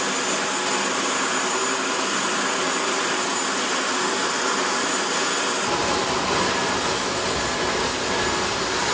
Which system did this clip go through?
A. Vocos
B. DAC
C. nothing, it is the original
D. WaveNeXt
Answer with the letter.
C